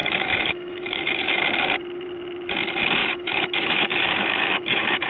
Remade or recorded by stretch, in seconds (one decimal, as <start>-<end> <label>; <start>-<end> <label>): 0.0-1.4 remade; 1.4-3.0 recorded; 3.0-5.1 remade